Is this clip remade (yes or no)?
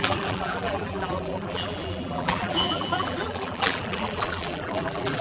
yes